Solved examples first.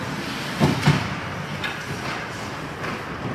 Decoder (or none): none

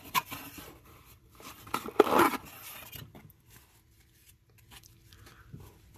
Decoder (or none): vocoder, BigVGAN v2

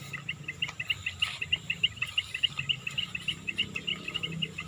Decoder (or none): none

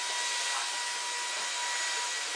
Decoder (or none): none